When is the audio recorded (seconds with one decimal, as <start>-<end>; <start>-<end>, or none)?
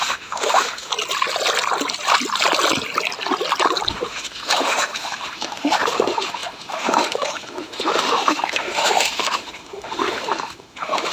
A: 0.9-3.9